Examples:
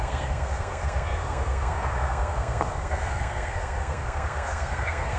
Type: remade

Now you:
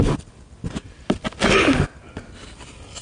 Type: recorded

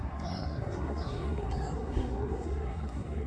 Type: remade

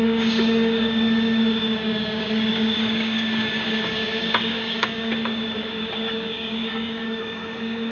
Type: remade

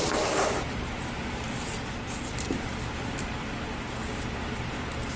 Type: remade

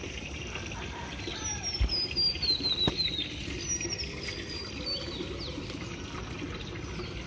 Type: recorded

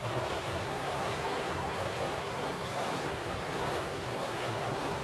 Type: remade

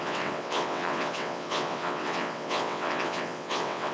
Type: remade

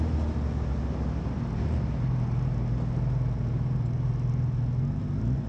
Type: recorded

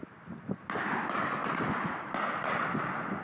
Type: recorded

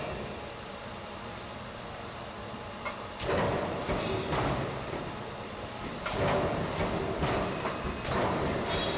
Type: remade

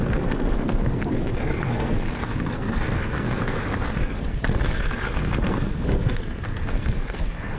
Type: remade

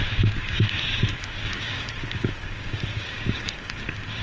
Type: remade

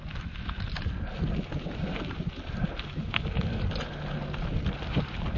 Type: recorded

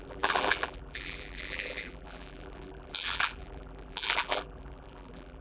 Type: remade